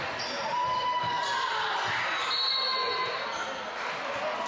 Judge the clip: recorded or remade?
recorded